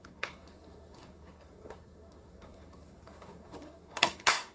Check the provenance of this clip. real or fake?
fake